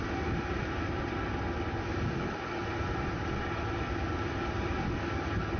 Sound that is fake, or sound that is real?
real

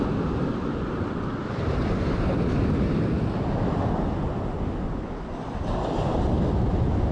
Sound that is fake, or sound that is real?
real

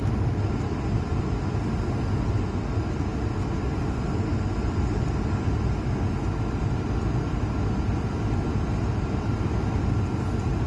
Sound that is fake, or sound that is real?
real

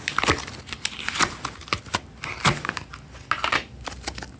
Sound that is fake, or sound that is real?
real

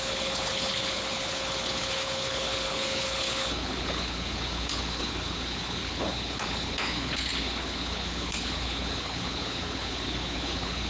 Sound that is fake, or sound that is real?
fake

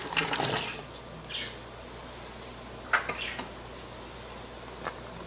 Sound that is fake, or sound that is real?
real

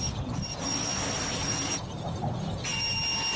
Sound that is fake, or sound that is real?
real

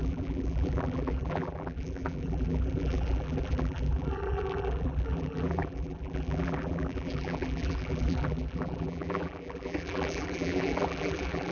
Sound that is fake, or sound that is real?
fake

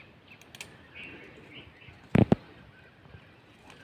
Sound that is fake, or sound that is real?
real